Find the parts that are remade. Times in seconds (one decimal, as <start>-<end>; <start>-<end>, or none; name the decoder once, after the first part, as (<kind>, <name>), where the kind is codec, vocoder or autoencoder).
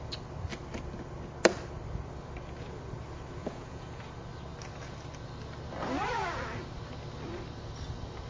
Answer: 3.4-4.0 (vocoder, Vocos)